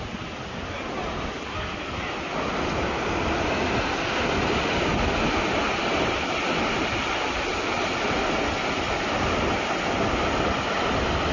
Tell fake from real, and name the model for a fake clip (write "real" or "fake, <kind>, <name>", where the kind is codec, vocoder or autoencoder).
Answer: real